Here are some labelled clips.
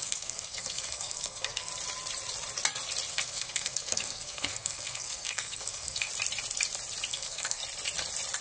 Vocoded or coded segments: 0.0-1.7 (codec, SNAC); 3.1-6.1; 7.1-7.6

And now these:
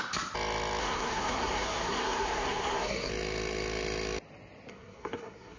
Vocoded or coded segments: 0.8-3.1 (codec, SNAC); 4.7-5.6

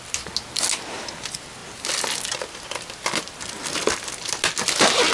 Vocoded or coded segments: none

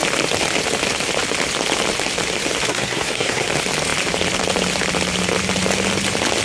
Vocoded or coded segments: 2.7-3.5 (codec, SNAC)